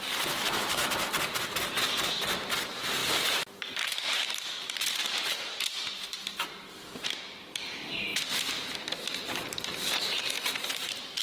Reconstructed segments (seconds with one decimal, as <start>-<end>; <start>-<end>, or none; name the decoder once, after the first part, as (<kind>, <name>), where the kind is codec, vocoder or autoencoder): 0.0-8.1 (vocoder, BigVGAN v2); 9.1-11.2